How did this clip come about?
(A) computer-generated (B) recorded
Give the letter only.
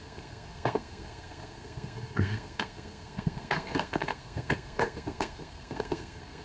A